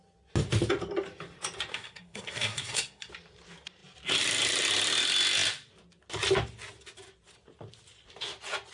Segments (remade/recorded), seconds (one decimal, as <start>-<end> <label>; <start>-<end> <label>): 0.0-1.7 recorded; 1.7-3.1 remade; 3.1-8.7 recorded